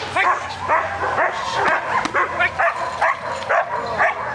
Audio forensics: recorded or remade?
recorded